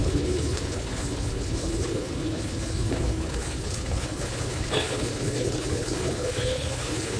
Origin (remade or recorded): remade